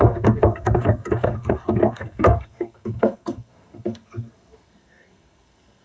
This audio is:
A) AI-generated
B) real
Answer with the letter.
A